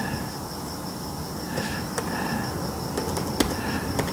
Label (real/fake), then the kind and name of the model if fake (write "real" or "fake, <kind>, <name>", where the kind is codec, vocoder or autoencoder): real